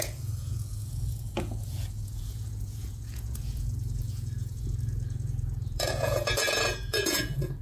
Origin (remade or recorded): remade